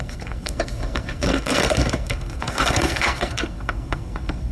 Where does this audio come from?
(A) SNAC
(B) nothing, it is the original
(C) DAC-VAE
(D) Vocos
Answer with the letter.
A